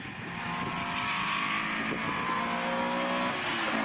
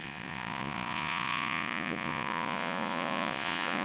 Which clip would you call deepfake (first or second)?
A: second